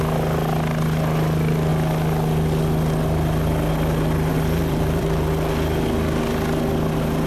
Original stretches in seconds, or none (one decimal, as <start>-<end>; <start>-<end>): 0.0-4.3; 5.3-7.3